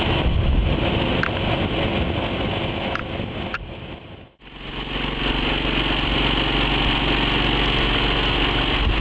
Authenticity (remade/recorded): recorded